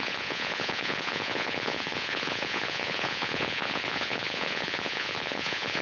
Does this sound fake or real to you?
fake